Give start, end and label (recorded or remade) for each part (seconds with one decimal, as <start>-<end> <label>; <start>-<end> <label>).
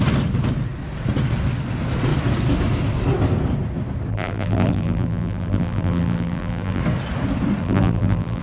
0.0-4.1 recorded; 4.1-6.8 remade; 6.8-7.6 recorded; 7.6-8.4 remade